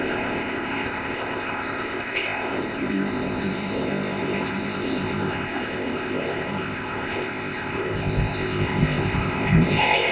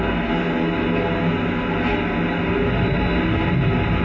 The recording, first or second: second